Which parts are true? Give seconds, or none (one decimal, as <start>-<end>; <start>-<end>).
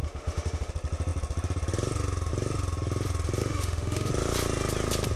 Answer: 0.7-3.4; 4.1-5.2